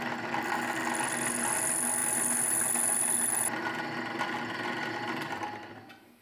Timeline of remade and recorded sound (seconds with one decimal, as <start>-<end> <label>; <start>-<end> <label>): 0.0-6.2 recorded